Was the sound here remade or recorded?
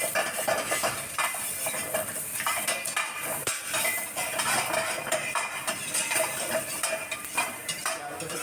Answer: remade